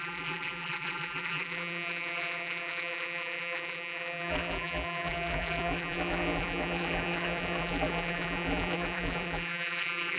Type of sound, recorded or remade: remade